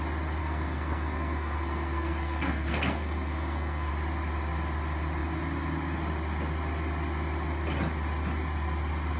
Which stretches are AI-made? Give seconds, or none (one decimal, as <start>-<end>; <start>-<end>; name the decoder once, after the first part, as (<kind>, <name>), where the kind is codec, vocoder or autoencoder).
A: 0.4-3.9 (codec, SNAC)